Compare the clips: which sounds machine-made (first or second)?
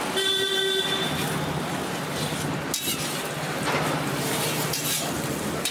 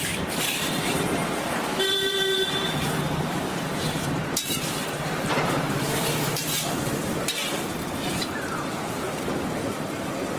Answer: second